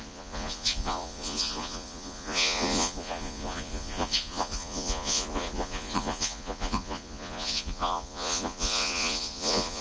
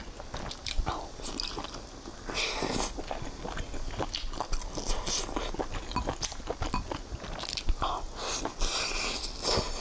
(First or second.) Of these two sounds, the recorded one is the second